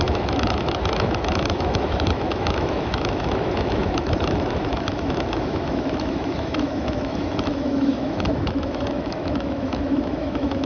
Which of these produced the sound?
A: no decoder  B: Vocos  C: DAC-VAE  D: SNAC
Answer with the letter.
C